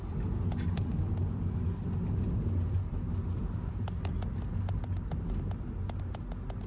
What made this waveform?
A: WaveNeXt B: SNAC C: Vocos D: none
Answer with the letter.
D